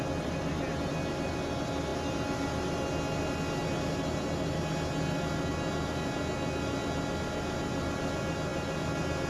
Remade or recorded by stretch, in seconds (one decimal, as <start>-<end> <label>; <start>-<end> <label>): 0.0-9.3 recorded